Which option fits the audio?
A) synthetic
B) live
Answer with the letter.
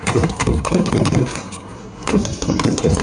A